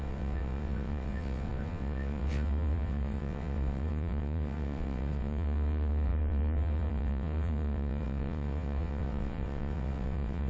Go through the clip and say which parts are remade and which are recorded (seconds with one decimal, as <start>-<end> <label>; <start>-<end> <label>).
0.0-10.5 remade